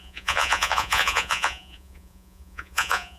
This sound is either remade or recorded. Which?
remade